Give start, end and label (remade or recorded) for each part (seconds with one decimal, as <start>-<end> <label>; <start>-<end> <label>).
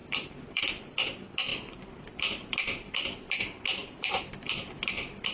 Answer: 0.0-0.6 remade; 0.6-1.5 recorded; 1.5-2.5 remade; 2.5-3.8 recorded; 3.8-4.3 remade; 4.3-5.3 recorded